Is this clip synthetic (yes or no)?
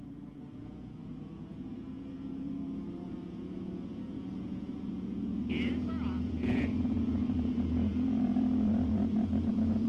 yes